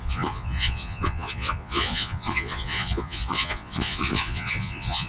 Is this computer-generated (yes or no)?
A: yes